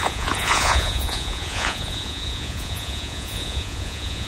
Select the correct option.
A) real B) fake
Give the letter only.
B